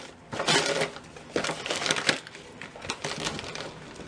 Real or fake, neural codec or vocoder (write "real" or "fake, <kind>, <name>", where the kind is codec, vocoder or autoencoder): real